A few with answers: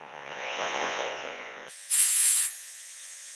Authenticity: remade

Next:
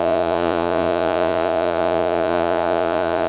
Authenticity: remade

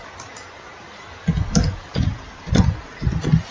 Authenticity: recorded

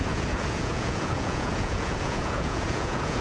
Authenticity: remade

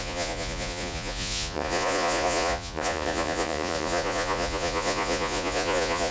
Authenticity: remade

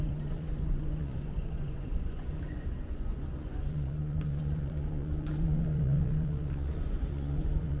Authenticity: remade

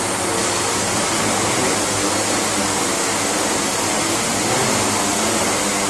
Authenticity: recorded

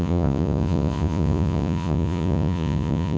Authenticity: remade